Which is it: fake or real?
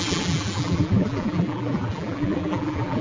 fake